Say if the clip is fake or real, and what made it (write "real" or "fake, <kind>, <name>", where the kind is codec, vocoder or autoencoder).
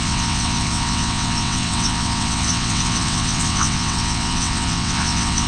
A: fake, vocoder, WaveNeXt